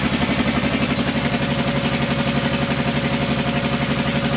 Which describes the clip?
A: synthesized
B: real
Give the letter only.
B